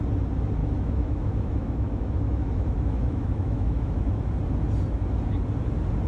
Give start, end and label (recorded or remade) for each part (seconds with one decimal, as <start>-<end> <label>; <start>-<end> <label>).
0.0-0.6 recorded; 0.6-4.3 remade; 4.3-6.1 recorded